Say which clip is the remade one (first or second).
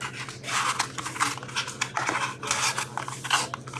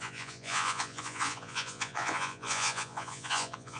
second